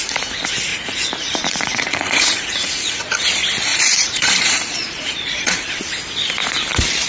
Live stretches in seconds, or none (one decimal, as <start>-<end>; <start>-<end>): 0.0-0.7; 3.0-3.7; 5.7-7.1